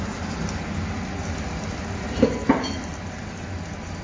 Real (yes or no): yes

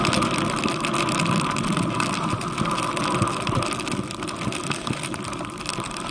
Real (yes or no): yes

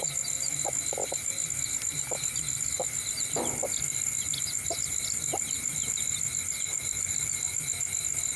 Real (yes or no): yes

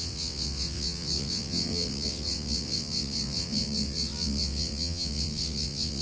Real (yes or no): no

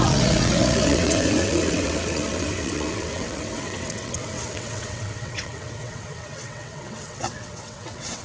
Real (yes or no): no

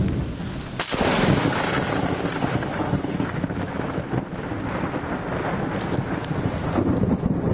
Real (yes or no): yes